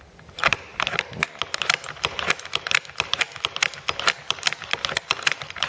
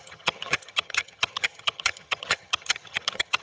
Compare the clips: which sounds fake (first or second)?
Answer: second